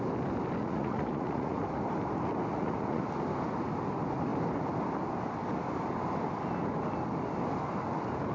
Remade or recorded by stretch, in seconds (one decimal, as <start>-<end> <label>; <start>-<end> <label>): 0.0-0.6 recorded; 0.6-1.6 remade; 1.6-2.5 recorded; 2.5-3.0 remade; 3.0-8.3 recorded